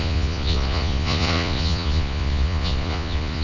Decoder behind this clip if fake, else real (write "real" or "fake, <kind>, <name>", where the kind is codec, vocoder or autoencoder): fake, vocoder, Vocos